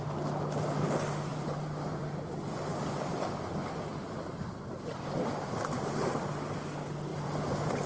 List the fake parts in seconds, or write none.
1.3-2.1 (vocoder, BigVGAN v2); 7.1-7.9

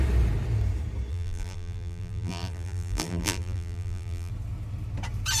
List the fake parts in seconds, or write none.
1.1-4.3 (vocoder, BigVGAN v2)